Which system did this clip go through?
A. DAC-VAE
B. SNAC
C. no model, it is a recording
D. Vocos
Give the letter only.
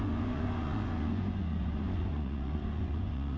D